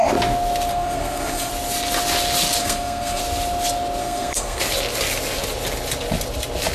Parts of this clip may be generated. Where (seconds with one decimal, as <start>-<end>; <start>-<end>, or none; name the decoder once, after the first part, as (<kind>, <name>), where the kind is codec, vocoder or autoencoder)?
0.7-1.5 (codec, SNAC); 2.6-3.2; 4.0-4.6